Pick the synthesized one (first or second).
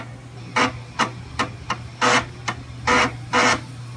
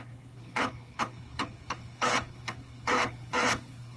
second